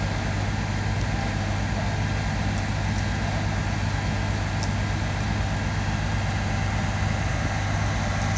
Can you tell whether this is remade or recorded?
recorded